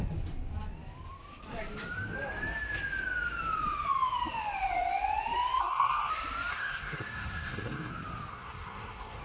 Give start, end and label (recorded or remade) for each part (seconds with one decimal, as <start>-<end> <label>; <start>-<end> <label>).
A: 0.0-5.6 recorded; 5.6-6.1 remade; 6.1-6.5 recorded; 6.5-7.9 remade; 7.9-8.3 recorded; 8.3-9.2 remade